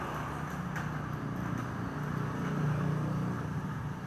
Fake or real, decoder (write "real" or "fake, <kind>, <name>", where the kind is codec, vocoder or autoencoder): real